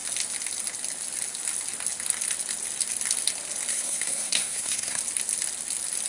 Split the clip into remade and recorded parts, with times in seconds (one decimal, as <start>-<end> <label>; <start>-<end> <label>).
0.0-3.7 recorded; 3.7-5.0 remade; 5.0-6.1 recorded